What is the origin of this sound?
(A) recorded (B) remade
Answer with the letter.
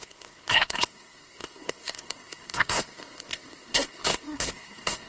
B